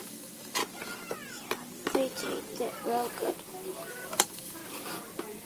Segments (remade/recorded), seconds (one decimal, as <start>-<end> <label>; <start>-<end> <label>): 0.0-0.6 remade; 0.6-3.9 recorded; 3.9-4.6 remade; 4.6-5.5 recorded